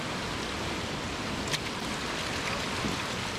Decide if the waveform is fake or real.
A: real